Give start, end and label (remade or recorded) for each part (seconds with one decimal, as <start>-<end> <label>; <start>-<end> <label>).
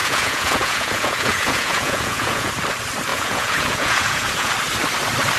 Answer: 0.0-2.5 remade; 2.5-3.1 recorded; 3.1-4.5 remade; 4.5-5.4 recorded